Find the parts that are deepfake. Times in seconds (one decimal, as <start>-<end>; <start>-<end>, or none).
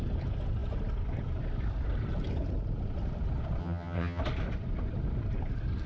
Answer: 3.6-4.2